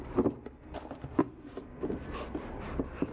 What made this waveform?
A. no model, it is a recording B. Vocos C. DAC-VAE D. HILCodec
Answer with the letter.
A